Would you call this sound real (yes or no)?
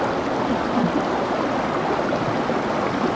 yes